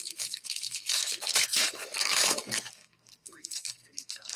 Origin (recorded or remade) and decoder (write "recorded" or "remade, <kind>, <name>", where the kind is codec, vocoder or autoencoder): remade, codec, SNAC